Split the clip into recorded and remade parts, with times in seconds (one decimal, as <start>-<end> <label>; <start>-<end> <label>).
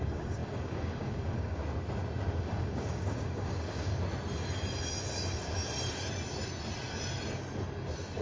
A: 0.0-1.6 remade; 1.6-2.4 recorded; 2.4-3.9 remade; 3.9-8.2 recorded